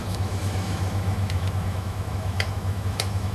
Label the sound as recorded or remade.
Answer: remade